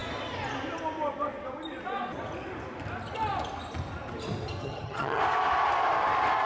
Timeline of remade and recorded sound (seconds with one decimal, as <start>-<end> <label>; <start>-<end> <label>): 0.0-4.6 recorded; 4.6-5.2 remade; 5.2-6.5 recorded